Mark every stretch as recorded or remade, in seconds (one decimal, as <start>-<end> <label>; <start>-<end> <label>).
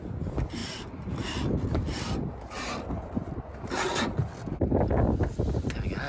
0.0-6.1 recorded